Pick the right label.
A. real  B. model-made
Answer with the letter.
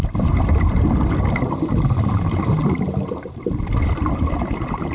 A